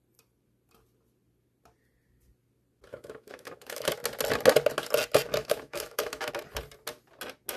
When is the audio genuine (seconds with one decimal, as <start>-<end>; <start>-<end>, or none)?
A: 0.0-2.9; 3.9-5.4; 6.3-7.6